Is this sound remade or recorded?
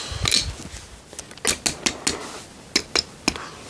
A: recorded